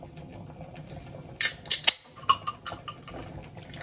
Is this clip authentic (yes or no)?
yes